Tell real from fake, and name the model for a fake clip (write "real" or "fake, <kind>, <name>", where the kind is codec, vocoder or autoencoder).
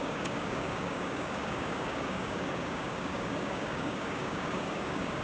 fake, codec, DAC